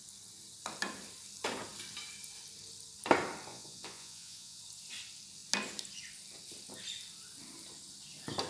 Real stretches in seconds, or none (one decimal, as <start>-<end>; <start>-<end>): 0.0-3.5; 4.6-8.5